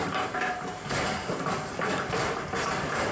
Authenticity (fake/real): fake